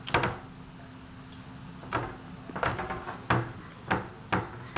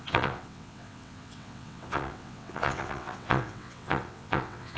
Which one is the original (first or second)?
first